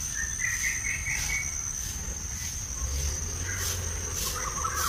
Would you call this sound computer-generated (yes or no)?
no